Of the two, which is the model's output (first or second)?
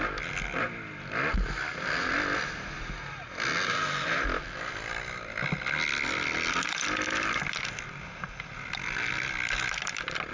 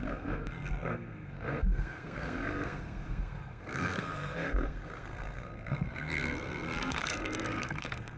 second